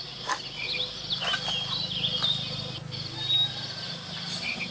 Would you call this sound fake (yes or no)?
no